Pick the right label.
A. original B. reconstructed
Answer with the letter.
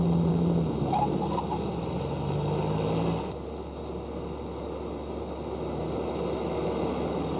A